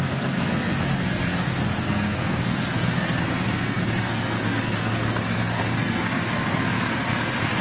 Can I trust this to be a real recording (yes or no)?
no